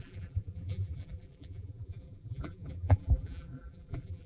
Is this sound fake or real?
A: fake